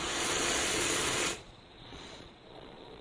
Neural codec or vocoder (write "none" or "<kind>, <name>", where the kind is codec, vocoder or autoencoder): vocoder, Vocos